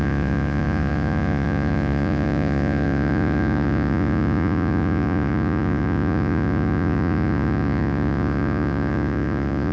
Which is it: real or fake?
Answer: fake